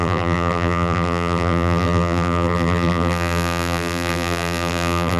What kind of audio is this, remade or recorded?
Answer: remade